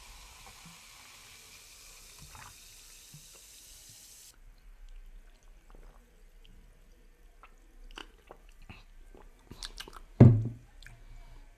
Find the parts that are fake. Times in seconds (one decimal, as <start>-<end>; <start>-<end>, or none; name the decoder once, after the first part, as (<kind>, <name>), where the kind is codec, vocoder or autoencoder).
8.0-10.7 (vocoder, BigVGAN v2)